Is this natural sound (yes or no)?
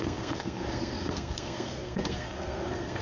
no